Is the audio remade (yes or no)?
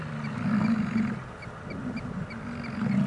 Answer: no